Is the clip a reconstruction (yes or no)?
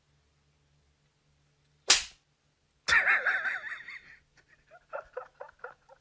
no